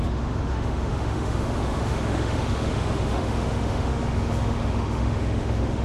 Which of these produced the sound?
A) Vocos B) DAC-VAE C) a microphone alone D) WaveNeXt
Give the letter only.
B